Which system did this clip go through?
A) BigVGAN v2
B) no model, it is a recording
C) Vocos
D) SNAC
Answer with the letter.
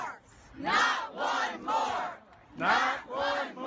B